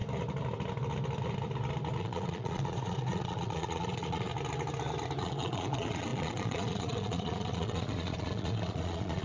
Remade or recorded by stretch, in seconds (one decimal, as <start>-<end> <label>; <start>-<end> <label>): 0.0-2.0 recorded; 2.0-4.3 remade; 4.3-5.2 recorded; 5.2-9.2 remade